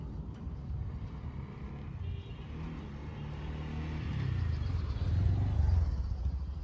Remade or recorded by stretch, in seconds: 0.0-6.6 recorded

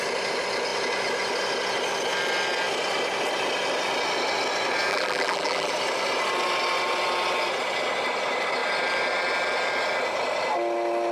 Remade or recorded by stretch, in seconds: 0.0-4.9 recorded; 4.9-5.7 remade; 5.7-11.1 recorded

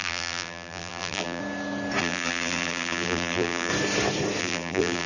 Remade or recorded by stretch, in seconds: 0.0-1.4 remade; 1.4-2.0 recorded; 2.0-3.7 remade; 3.7-4.4 recorded; 4.4-5.1 remade

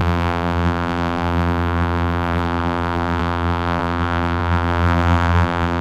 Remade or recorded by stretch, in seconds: 0.0-5.8 remade

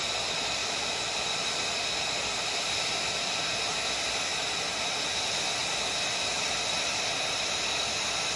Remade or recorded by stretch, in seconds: 0.0-0.6 recorded; 0.6-1.1 remade; 1.1-8.4 recorded